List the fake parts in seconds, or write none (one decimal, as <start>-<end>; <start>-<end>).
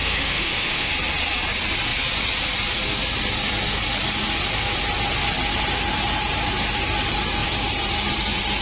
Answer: 0.0-0.9